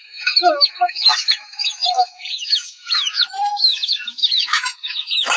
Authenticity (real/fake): fake